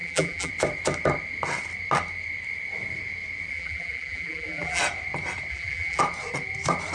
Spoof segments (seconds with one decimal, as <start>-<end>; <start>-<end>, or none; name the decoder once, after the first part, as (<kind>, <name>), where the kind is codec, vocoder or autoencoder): 0.0-0.5 (vocoder, BigVGAN v2); 3.5-4.8; 5.5-6.0